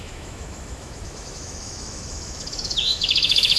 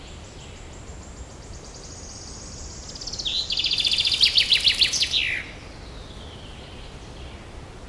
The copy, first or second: first